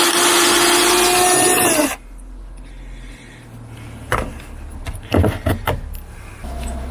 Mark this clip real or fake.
real